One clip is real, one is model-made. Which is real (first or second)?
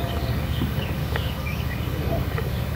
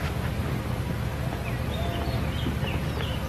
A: second